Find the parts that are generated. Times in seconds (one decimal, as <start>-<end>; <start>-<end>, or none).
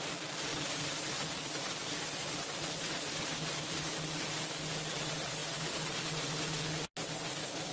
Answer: none